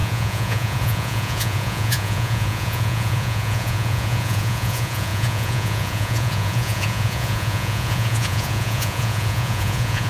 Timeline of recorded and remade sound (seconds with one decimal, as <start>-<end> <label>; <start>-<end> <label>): 0.0-10.1 remade